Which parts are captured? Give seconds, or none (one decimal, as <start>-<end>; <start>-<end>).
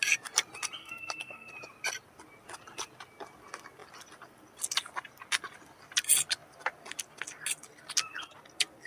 0.0-0.8; 1.5-8.9